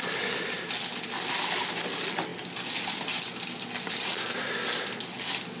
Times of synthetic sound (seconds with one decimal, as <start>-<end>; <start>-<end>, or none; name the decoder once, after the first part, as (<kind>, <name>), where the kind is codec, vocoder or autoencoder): none